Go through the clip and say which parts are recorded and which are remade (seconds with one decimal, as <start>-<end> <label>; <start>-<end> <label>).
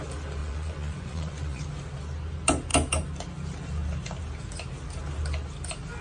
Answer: 0.0-0.4 recorded; 0.4-1.6 remade; 1.6-6.0 recorded